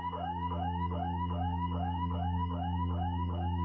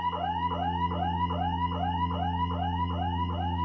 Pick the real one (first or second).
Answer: second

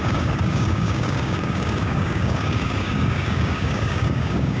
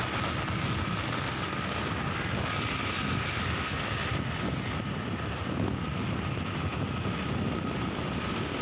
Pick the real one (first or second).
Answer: second